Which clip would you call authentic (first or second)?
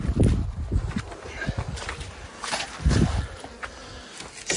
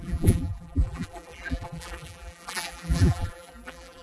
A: first